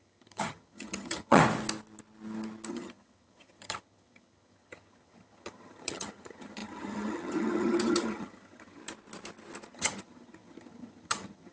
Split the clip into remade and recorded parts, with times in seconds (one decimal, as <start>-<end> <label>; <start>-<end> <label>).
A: 0.0-1.4 remade; 1.4-2.7 recorded; 2.7-8.8 remade; 8.8-9.7 recorded; 9.7-11.5 remade